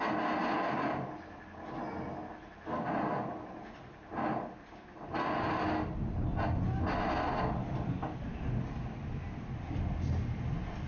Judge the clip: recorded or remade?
recorded